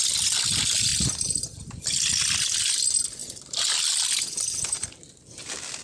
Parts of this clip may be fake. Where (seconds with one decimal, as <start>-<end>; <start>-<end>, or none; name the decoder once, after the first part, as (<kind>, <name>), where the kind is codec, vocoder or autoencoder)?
none